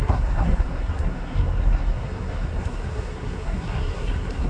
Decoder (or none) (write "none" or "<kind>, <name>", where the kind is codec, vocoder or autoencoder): codec, SNAC